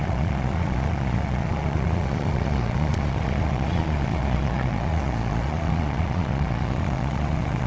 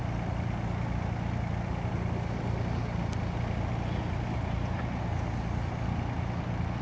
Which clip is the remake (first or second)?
first